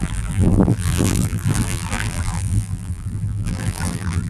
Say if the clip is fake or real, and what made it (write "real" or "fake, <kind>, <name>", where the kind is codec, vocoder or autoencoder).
fake, vocoder, BigVGAN v2